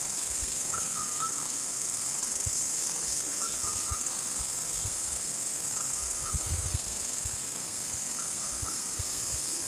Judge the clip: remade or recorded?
remade